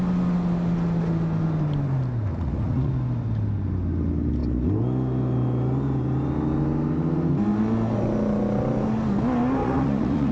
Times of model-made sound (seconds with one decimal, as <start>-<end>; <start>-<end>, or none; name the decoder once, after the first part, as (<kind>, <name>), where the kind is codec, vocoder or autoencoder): 2.3-2.9 (vocoder, Vocos); 9.6-10.3